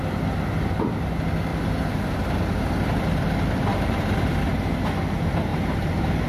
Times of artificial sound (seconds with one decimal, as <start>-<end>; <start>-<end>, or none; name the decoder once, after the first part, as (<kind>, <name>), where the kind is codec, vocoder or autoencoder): 1.5-2.3 (vocoder, BigVGAN v2); 3.7-4.4; 5.5-6.3